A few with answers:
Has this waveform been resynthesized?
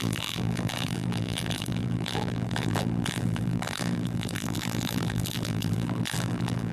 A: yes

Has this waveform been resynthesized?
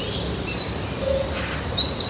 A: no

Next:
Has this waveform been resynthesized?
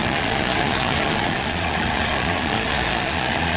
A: yes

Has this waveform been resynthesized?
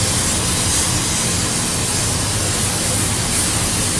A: no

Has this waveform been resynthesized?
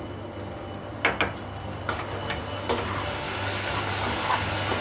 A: no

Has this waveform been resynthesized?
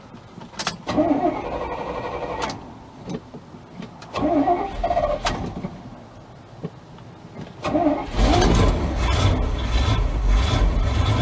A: no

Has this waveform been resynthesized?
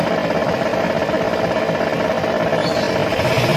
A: no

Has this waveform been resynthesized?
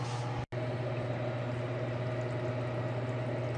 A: no